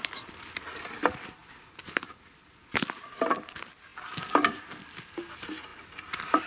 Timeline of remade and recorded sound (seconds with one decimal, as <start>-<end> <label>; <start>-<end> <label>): 0.0-6.5 recorded